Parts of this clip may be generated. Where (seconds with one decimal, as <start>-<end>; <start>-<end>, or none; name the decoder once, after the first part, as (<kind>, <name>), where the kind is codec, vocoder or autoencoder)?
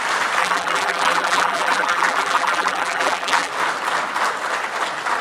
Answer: 0.4-3.5 (vocoder, BigVGAN v2)